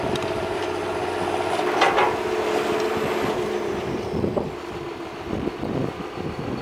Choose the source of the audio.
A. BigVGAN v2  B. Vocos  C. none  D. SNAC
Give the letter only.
C